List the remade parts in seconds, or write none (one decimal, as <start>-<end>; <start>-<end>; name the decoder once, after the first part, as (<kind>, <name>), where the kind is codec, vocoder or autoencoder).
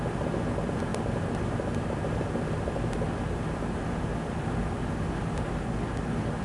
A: none